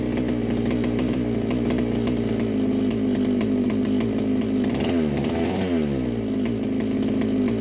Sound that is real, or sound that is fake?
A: real